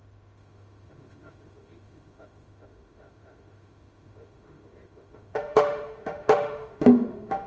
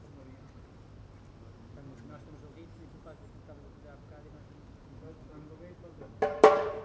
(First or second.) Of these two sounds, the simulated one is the first